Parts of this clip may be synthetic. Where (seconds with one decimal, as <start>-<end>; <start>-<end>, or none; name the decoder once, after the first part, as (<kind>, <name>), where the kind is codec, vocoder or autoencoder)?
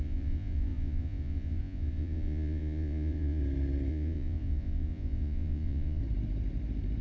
0.0-3.4 (vocoder, Vocos); 3.9-6.0